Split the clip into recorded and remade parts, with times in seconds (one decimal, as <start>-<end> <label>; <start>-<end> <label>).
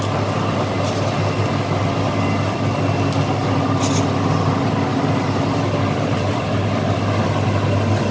0.0-4.9 recorded; 4.9-6.6 remade; 6.6-8.1 recorded